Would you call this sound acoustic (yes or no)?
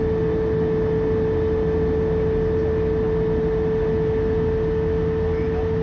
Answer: yes